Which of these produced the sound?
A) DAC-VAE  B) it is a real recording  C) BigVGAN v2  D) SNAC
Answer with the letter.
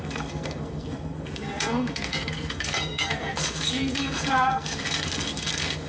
D